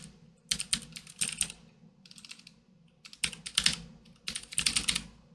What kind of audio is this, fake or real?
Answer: real